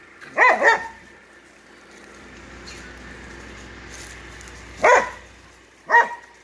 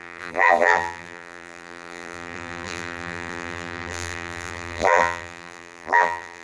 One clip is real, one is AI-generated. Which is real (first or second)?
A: first